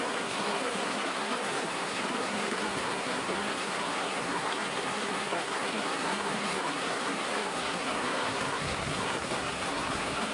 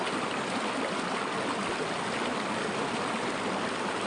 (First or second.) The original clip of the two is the second